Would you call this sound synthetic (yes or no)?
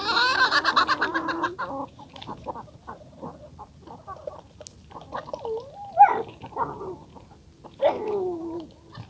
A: no